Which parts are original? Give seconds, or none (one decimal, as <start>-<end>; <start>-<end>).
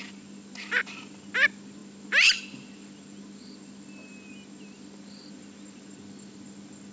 0.0-6.9